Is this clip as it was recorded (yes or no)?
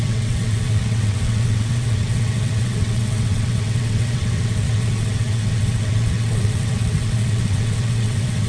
no